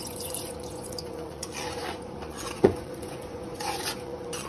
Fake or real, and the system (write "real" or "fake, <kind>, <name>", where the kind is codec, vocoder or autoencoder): fake, vocoder, Vocos